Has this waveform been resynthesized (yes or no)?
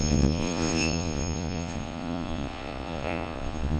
yes